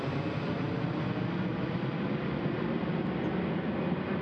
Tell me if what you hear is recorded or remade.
recorded